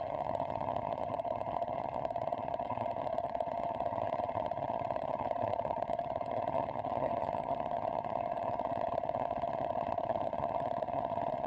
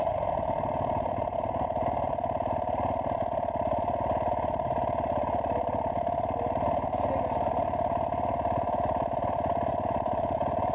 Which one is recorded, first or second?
second